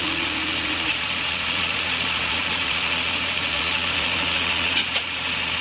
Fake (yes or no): yes